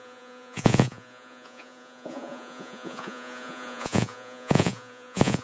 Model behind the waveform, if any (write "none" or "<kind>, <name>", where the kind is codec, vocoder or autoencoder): vocoder, Vocos